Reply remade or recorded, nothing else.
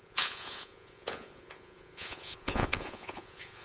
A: remade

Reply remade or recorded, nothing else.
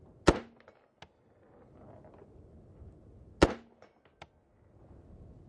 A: recorded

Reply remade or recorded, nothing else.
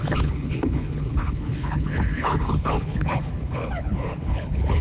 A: remade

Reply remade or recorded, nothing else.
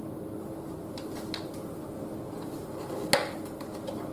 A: recorded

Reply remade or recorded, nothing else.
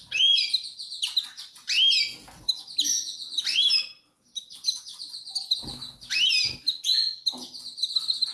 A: recorded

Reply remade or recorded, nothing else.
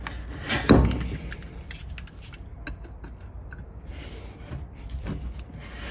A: recorded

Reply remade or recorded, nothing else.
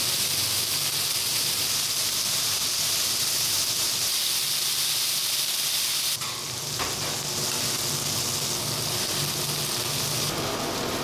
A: recorded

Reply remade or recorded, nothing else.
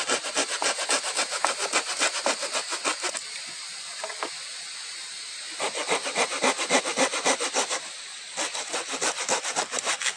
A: recorded